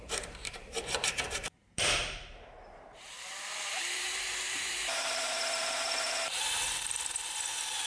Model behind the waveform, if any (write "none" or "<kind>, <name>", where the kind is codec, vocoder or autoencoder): vocoder, BigVGAN v2